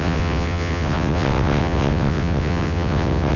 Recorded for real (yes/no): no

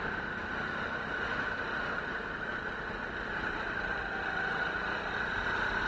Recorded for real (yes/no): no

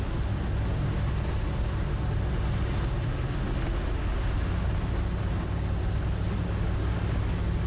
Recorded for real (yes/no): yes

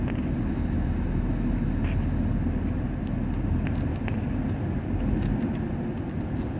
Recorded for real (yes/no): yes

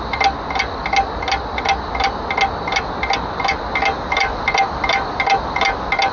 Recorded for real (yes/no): yes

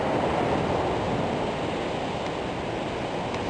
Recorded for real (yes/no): yes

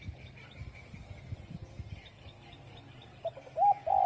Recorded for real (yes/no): yes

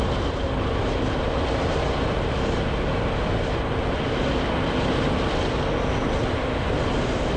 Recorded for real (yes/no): yes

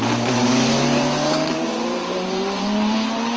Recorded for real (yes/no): no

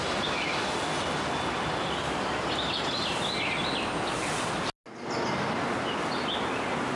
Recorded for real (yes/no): yes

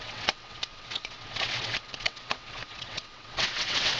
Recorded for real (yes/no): no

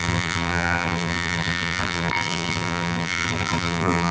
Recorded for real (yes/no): no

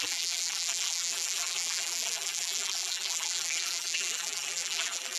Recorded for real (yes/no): no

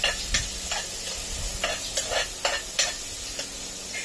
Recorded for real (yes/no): yes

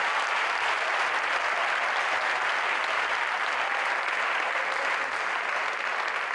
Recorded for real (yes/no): yes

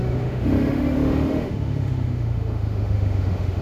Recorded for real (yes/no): no